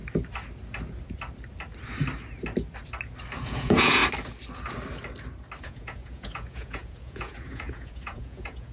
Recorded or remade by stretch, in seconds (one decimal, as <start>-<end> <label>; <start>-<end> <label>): 0.0-3.4 recorded; 3.4-4.0 remade; 4.0-5.6 recorded; 5.6-8.7 remade